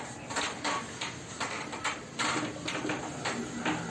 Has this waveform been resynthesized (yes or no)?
no